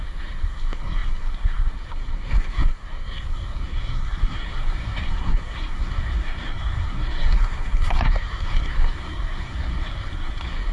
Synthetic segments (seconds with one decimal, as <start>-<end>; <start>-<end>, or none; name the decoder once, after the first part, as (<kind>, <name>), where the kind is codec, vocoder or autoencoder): 0.0-10.7 (codec, SNAC)